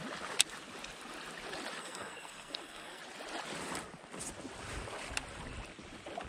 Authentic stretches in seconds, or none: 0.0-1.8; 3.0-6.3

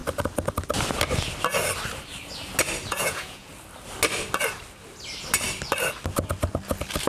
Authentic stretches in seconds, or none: 0.0-2.9; 3.5-7.1

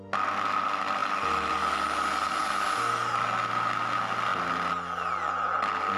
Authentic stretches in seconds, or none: 0.0-6.0